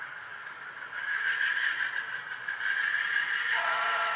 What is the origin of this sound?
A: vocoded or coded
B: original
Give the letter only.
A